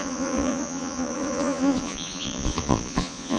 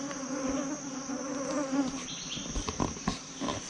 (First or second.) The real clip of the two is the second